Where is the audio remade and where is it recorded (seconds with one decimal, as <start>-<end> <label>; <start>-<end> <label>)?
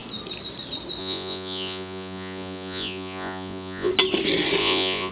0.0-1.0 recorded; 1.0-3.9 remade; 3.9-4.6 recorded; 4.6-5.1 remade